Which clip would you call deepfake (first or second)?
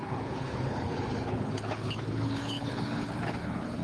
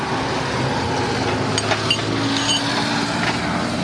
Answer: first